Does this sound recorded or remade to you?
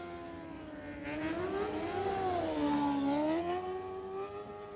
recorded